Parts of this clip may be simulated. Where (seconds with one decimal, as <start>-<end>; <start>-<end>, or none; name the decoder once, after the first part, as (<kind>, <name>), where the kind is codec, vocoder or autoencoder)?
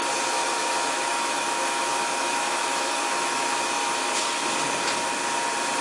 0.4-3.9 (autoencoder, DAC-VAE)